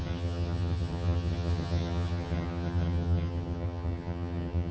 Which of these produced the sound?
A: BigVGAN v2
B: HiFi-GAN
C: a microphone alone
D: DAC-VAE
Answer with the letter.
B